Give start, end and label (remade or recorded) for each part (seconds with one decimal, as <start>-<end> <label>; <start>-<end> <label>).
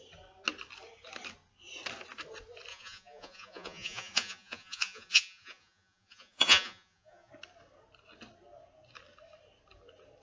0.0-2.7 recorded; 2.7-7.3 remade; 7.3-10.2 recorded